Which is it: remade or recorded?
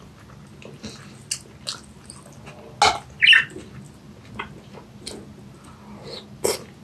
recorded